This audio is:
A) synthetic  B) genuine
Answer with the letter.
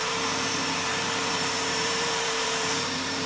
A